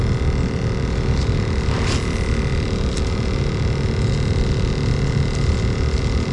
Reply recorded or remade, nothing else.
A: recorded